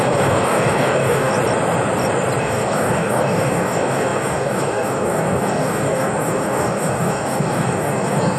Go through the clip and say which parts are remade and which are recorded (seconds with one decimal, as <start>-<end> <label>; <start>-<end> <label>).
0.0-1.3 remade; 1.3-2.4 recorded; 2.4-8.4 remade